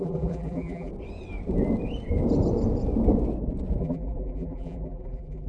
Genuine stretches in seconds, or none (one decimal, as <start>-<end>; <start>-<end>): 0.9-3.8